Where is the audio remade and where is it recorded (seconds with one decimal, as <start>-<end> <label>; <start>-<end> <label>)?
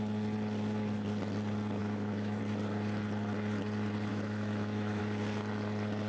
0.0-1.8 recorded; 1.8-2.4 remade; 2.4-4.1 recorded; 4.1-5.0 remade; 5.0-6.1 recorded